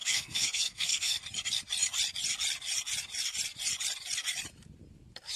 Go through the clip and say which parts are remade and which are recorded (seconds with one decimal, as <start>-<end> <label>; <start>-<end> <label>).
0.0-1.2 remade; 1.2-5.4 recorded